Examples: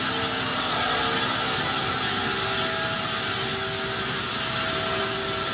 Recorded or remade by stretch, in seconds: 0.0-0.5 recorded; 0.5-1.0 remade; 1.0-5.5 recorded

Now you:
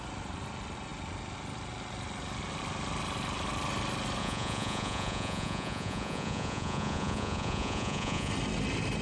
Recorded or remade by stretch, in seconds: 0.0-4.2 recorded; 4.2-8.3 remade; 8.3-9.0 recorded

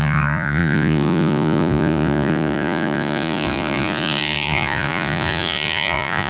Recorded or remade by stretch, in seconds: 0.0-6.3 remade

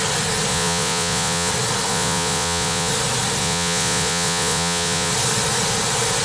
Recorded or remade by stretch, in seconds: 0.0-0.5 recorded; 0.5-1.5 remade; 1.5-1.9 recorded; 1.9-2.9 remade; 2.9-3.4 recorded; 3.4-5.1 remade; 5.1-6.2 recorded

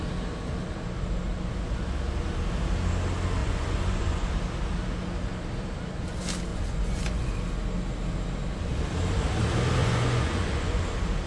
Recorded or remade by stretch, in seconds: 0.0-3.4 recorded; 3.4-4.3 remade; 4.3-6.5 recorded; 6.5-7.3 remade; 7.3-9.8 recorded; 9.8-10.8 remade; 10.8-11.3 recorded

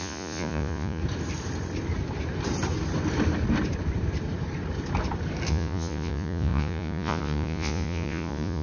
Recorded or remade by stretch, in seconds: 0.0-1.0 remade; 1.0-5.5 recorded; 5.5-8.6 remade

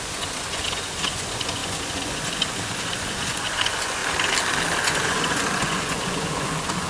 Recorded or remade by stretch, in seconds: 0.0-4.0 remade; 4.0-4.8 recorded; 4.8-6.9 remade